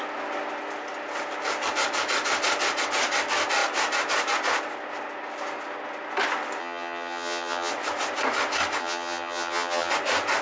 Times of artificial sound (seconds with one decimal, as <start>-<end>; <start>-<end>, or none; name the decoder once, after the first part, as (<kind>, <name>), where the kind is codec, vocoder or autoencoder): 6.6-7.7 (vocoder, HiFi-GAN); 8.8-9.9